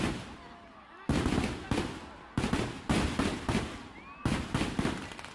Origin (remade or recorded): recorded